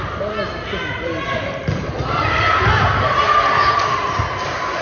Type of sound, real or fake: real